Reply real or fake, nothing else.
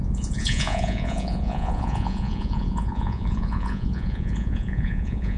fake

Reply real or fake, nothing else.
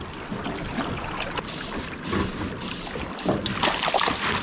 real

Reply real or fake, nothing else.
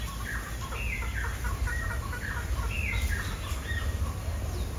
real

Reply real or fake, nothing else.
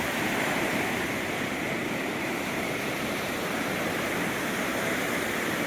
fake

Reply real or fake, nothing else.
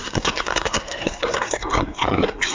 fake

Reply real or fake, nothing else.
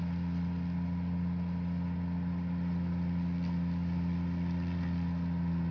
real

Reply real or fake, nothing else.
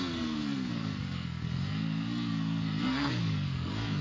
fake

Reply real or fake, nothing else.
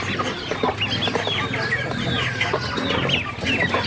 real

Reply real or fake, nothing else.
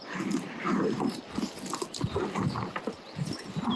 real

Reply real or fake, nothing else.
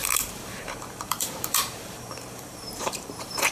fake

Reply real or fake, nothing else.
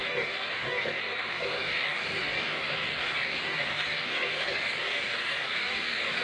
fake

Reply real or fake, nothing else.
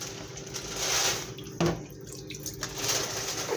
real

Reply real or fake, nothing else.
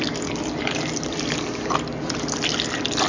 real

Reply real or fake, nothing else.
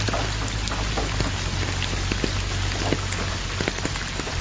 real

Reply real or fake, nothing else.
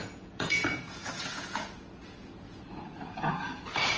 fake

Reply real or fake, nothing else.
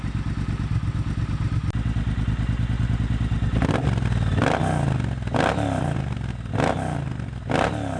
real